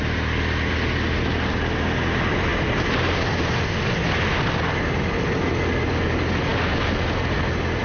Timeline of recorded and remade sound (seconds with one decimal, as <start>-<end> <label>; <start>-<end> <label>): 0.0-7.8 recorded